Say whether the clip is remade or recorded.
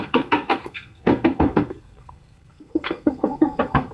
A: remade